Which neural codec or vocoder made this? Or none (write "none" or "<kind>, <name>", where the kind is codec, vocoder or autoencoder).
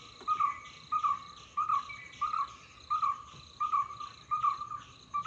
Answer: none